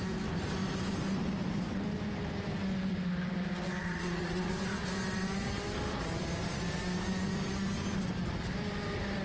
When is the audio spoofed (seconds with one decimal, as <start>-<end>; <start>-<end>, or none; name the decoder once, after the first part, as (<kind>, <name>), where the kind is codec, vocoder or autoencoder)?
3.8-4.5 (vocoder, Vocos)

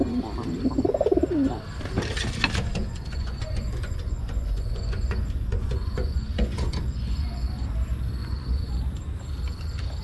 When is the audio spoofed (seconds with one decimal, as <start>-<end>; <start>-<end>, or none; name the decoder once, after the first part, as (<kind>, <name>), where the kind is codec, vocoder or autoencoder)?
2.7-7.5 (vocoder, Vocos); 8.2-8.7